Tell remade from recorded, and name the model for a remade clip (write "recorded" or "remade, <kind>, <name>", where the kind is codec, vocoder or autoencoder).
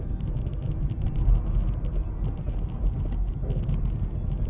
recorded